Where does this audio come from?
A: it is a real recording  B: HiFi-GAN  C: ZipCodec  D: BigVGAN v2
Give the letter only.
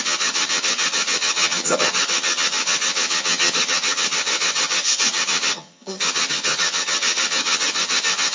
B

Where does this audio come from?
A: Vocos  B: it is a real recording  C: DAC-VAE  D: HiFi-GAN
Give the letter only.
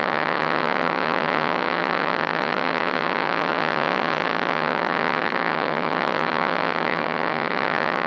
D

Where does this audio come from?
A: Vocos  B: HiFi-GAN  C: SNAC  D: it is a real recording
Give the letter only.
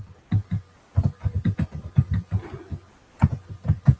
D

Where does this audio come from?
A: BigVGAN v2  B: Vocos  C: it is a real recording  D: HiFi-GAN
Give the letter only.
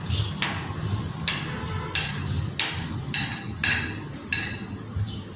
C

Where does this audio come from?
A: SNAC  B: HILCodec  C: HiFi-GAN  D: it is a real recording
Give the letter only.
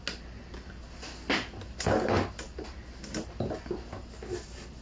D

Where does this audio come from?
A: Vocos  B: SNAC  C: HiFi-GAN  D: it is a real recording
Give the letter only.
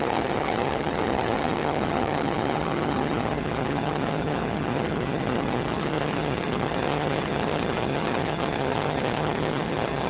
C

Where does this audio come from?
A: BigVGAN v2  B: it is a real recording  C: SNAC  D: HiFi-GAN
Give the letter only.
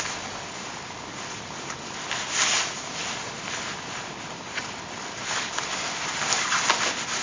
B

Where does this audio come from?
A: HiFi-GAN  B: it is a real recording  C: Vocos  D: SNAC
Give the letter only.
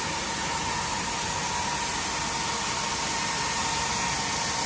B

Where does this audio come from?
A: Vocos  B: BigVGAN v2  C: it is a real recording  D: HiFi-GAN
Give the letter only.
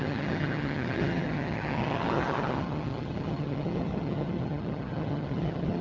D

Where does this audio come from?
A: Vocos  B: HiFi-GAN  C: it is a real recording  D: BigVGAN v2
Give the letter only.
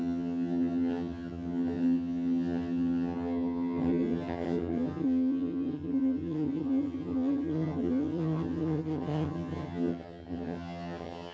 B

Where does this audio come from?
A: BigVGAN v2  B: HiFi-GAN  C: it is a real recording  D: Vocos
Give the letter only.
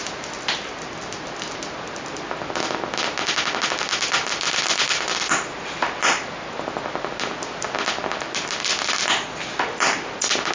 C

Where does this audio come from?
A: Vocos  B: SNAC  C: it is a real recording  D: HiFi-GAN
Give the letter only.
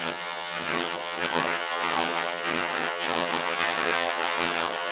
D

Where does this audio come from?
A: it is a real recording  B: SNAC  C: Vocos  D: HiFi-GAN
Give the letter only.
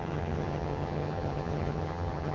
D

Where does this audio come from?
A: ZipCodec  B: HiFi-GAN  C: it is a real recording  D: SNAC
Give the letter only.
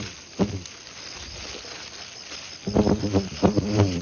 C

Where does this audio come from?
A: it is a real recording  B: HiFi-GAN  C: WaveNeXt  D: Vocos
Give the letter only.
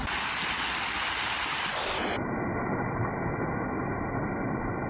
A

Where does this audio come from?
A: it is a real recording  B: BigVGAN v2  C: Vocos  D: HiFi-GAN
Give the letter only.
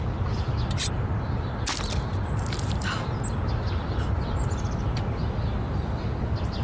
A